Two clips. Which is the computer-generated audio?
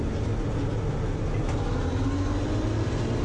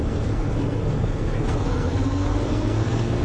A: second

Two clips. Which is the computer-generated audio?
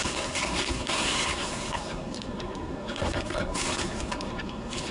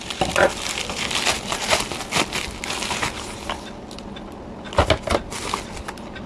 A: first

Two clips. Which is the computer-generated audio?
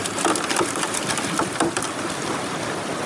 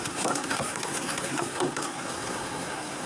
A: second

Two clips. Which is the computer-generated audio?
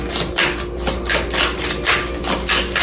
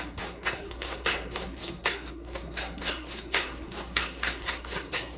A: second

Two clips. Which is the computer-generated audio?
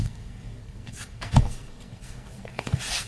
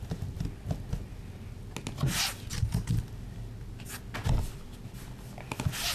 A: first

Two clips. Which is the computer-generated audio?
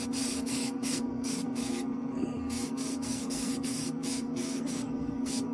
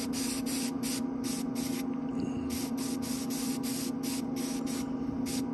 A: first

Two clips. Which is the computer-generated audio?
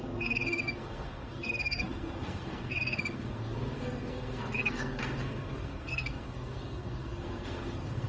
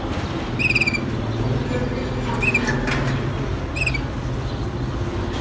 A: first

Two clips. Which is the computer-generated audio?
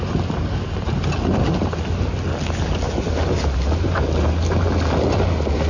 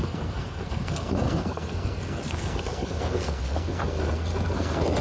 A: second